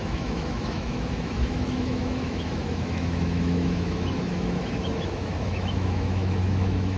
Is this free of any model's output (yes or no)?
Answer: no